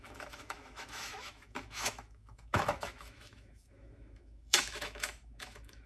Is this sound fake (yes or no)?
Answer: yes